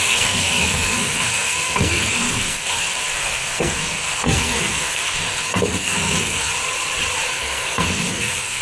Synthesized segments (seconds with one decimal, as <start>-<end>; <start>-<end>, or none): 0.0-6.5; 7.3-8.6